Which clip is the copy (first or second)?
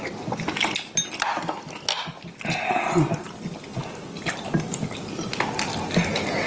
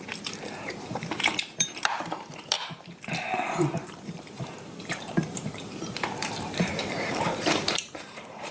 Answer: second